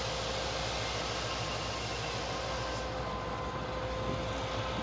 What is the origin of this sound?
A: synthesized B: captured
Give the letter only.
B